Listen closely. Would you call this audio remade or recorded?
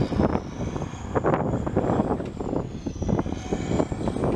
recorded